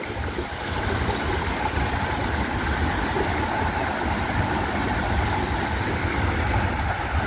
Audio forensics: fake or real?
real